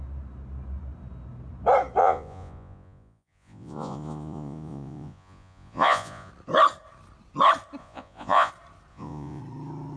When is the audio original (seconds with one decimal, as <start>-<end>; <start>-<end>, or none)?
0.0-2.0; 6.3-7.8; 8.5-8.9; 9.4-10.0